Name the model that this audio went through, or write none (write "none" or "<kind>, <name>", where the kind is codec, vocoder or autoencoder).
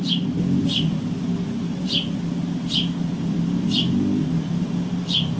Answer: none